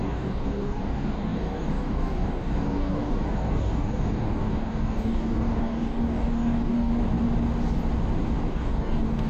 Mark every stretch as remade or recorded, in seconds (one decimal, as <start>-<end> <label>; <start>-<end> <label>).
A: 0.0-6.9 remade; 6.9-8.5 recorded; 8.5-9.3 remade